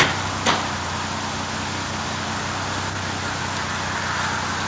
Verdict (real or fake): real